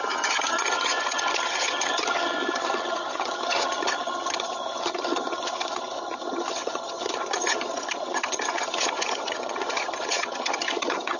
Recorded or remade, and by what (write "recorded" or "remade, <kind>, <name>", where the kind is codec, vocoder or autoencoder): remade, vocoder, HiFi-GAN